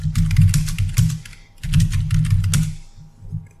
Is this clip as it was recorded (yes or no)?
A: yes